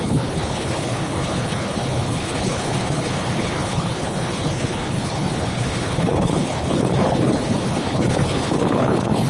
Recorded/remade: remade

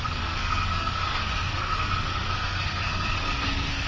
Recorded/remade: remade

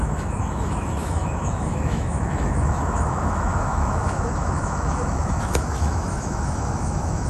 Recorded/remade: remade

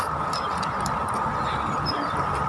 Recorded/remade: recorded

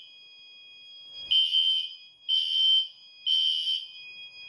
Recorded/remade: recorded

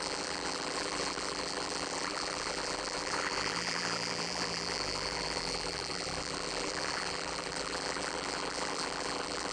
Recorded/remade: remade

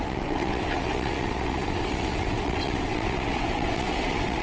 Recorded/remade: remade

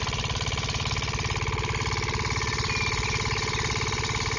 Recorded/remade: recorded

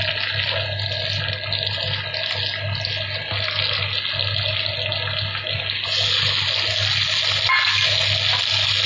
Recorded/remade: recorded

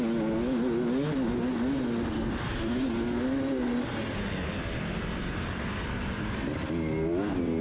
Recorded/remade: recorded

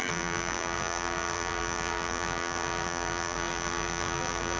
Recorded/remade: remade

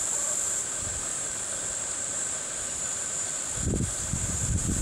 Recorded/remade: remade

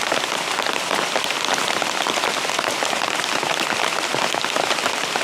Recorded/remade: remade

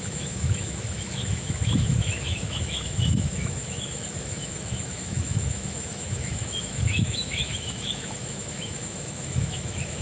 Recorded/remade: remade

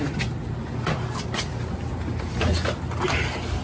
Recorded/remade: recorded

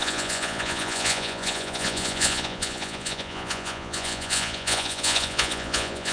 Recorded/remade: remade